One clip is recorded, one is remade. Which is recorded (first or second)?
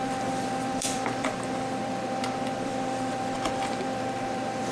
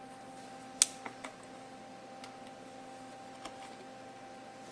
second